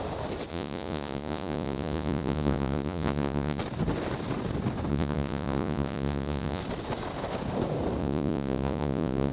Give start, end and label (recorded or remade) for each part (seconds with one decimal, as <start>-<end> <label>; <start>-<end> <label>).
0.0-0.5 recorded; 0.5-3.6 remade; 3.6-4.9 recorded; 4.9-6.6 remade; 6.6-8.0 recorded; 8.0-9.3 remade